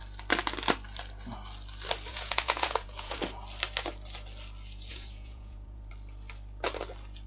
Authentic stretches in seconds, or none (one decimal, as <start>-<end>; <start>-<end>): 0.0-2.1; 3.2-4.9; 5.9-7.3